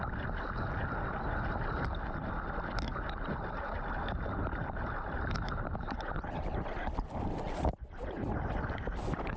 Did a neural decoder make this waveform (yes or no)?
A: no